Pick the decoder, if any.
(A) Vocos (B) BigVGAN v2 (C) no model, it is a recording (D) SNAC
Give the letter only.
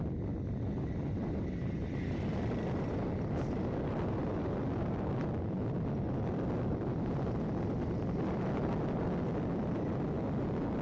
C